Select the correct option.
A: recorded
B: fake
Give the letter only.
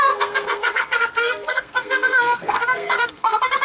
B